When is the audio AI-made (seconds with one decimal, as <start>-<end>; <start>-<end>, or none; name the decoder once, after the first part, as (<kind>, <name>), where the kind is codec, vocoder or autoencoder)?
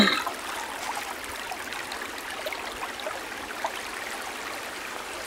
none